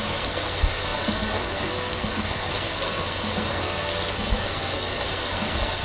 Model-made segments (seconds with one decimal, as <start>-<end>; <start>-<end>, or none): 0.0-5.8